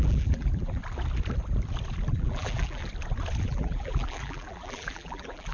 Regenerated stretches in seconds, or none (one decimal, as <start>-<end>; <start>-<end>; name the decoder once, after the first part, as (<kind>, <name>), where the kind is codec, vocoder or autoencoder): 0.0-0.8 (vocoder, BigVGAN v2); 2.1-2.8; 3.4-5.5